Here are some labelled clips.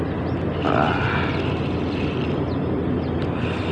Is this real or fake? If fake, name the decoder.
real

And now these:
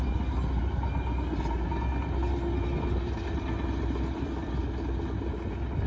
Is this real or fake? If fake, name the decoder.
real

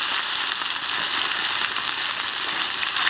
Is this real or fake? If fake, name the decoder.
real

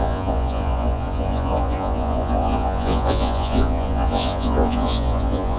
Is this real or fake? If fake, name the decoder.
fake, vocoder, Vocos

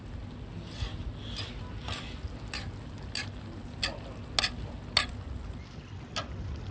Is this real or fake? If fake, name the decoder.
real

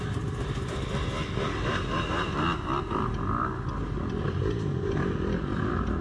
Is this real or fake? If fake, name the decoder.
real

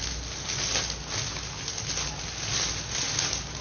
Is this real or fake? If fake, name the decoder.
real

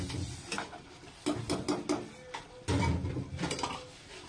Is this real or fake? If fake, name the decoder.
real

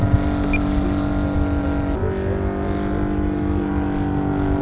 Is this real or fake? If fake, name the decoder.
real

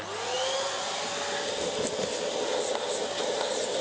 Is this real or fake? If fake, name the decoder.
real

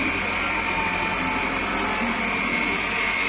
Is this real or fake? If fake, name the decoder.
real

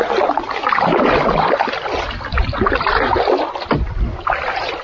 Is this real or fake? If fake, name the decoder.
real